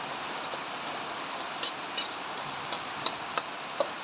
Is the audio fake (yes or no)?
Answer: no